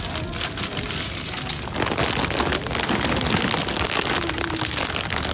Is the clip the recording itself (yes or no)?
yes